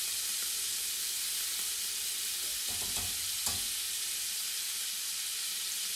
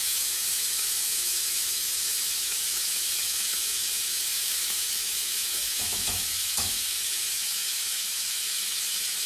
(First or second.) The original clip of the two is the first